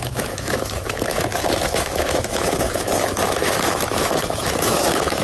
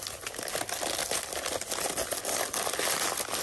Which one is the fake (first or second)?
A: first